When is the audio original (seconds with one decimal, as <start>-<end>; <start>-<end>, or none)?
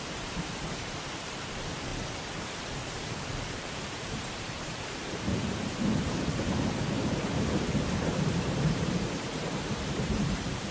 5.3-7.9